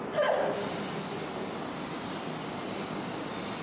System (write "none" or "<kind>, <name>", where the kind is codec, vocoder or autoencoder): none